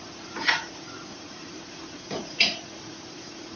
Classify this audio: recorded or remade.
remade